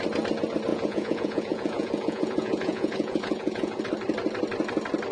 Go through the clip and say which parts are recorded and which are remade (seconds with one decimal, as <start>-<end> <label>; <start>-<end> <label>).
0.0-0.7 recorded; 0.7-3.8 remade; 3.8-5.1 recorded